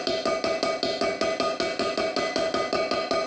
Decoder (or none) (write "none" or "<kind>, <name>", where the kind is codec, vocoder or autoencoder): none